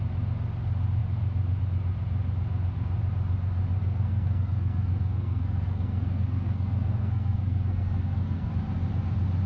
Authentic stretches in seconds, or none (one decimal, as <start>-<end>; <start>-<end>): 0.0-3.8; 8.5-9.5